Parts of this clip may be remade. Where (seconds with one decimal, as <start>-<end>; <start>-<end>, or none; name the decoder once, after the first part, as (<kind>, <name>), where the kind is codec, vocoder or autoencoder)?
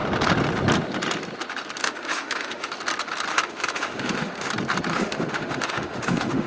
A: 1.8-2.7 (autoencoder, DAC-VAE); 3.3-4.5; 4.9-6.5